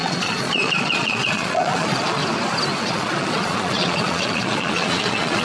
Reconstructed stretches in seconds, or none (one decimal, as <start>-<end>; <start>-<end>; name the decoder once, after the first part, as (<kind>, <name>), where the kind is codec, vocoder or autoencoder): 0.0-2.2 (vocoder, Vocos); 2.8-5.4